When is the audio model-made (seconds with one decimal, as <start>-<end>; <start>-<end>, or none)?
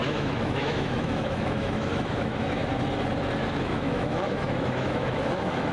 0.0-2.6; 3.5-5.7